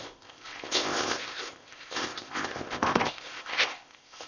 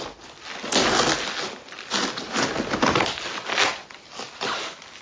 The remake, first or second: first